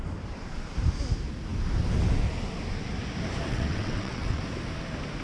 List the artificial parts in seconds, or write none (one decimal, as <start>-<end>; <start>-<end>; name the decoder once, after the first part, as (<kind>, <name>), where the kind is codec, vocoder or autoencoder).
3.5-4.4 (vocoder, WaveNeXt)